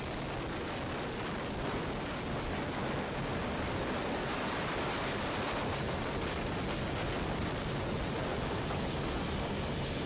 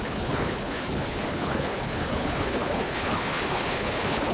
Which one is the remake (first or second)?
second